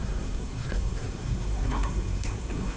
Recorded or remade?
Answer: remade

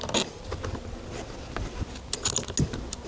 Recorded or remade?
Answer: recorded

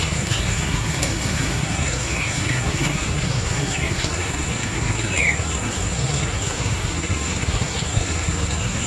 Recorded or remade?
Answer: remade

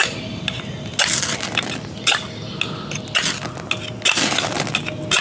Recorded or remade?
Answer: recorded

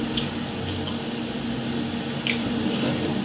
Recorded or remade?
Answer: recorded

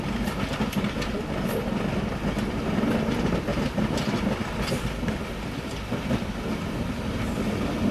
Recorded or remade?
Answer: recorded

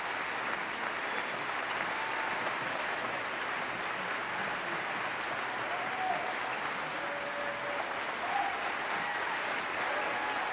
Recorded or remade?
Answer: recorded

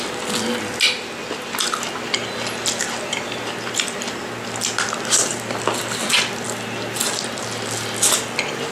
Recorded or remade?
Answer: recorded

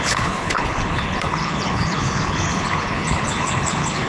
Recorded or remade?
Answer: remade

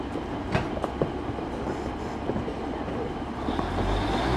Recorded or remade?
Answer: recorded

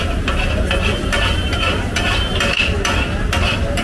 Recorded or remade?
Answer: recorded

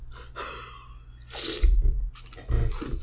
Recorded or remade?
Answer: recorded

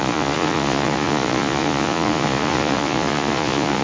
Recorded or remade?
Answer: remade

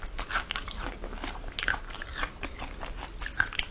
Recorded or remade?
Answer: recorded